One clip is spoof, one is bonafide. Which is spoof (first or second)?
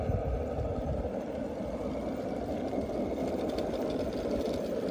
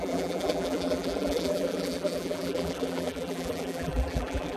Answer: second